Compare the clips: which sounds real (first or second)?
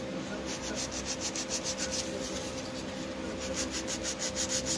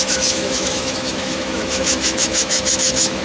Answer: first